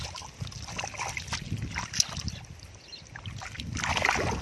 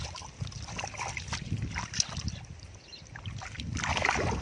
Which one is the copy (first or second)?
second